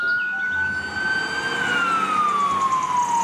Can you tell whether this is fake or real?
real